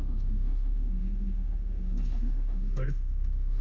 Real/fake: fake